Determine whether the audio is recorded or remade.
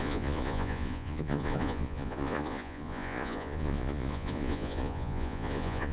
remade